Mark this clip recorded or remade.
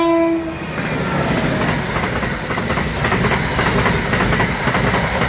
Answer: recorded